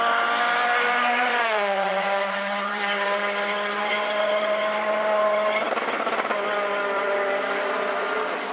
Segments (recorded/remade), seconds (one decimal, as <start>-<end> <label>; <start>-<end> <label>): 0.0-1.3 recorded; 1.3-5.5 remade; 5.5-8.5 recorded